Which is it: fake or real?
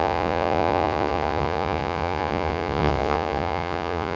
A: fake